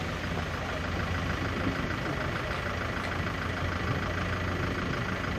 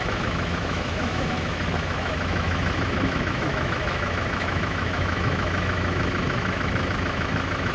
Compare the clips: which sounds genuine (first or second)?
first